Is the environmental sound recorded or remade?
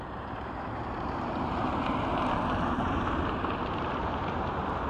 remade